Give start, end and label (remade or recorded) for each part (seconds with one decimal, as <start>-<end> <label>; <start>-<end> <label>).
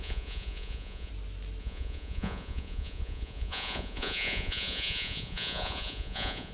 0.0-1.1 remade; 1.1-1.6 recorded; 1.6-6.5 remade